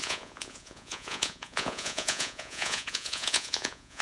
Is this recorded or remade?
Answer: remade